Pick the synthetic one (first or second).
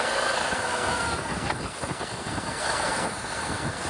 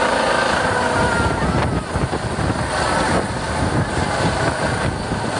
first